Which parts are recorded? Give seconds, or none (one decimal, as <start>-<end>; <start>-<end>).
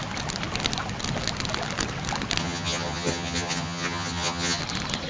0.0-2.4; 4.6-5.1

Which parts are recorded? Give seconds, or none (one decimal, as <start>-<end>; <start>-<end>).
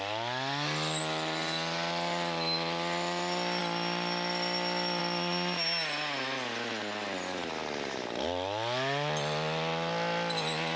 0.0-10.8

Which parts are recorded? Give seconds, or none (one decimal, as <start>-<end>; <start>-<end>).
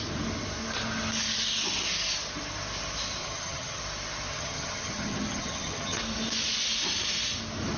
0.0-3.2; 3.8-4.3; 6.0-7.8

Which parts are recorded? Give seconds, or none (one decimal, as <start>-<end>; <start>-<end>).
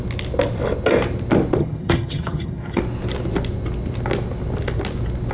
0.0-1.6; 2.8-5.3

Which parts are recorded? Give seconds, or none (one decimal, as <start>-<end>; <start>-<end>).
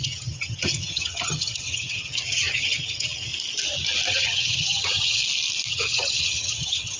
3.3-4.1; 5.2-5.7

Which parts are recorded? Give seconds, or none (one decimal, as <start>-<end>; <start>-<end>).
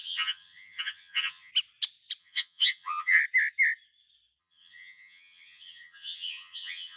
1.5-2.2; 3.2-4.4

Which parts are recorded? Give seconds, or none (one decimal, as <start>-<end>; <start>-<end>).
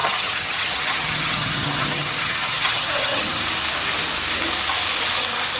3.4-5.6